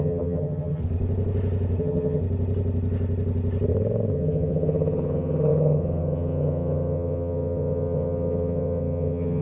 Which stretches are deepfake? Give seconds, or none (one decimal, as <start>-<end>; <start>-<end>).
0.0-0.8; 1.8-2.2; 4.1-9.4